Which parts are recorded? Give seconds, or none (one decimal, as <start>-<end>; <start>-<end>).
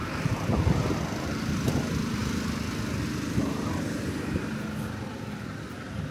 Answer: 2.2-4.6